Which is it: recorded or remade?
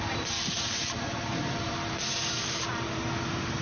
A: remade